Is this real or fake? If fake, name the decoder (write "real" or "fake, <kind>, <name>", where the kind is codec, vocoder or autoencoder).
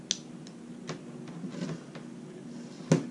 real